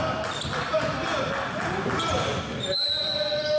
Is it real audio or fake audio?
real